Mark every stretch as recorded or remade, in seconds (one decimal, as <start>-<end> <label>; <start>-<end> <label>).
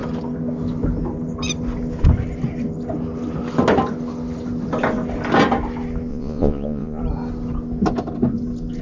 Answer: 0.0-6.1 recorded; 6.1-7.0 remade; 7.0-8.8 recorded